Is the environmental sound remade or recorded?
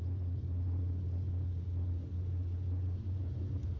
recorded